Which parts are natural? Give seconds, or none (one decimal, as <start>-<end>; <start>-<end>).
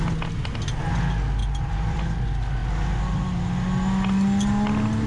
0.0-1.4; 2.0-5.1